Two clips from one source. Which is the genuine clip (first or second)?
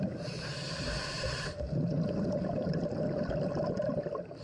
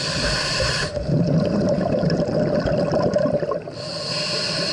first